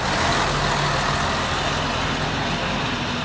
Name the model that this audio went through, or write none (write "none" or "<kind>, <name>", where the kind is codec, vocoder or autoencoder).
none